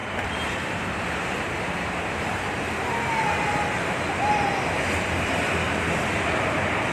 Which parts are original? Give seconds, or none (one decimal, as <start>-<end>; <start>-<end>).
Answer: 2.9-6.9